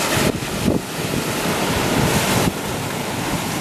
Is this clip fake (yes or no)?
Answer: no